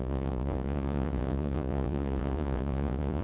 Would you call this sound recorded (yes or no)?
no